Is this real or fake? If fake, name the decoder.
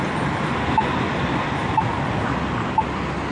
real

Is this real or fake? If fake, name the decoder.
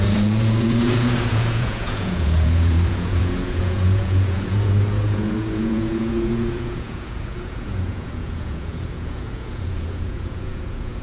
fake, vocoder, Vocos